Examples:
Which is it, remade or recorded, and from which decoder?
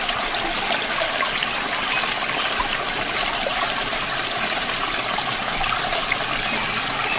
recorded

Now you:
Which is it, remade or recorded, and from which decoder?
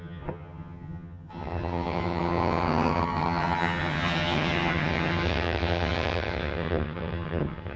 remade, vocoder, HiFi-GAN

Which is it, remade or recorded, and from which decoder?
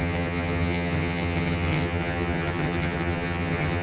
remade, vocoder, HiFi-GAN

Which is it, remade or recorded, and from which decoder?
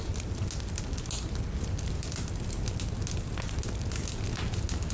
recorded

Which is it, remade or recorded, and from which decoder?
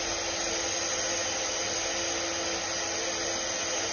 recorded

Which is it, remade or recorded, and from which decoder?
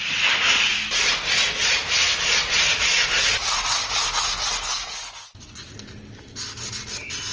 recorded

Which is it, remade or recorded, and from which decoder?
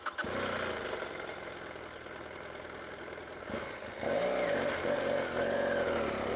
recorded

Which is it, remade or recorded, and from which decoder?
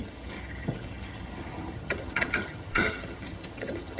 remade, vocoder, HiFi-GAN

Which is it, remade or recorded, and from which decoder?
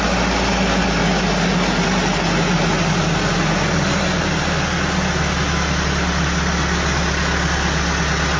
recorded